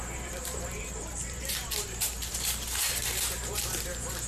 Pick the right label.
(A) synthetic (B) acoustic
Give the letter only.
A